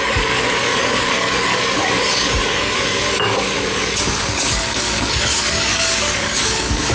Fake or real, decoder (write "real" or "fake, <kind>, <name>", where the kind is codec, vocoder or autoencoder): fake, codec, DAC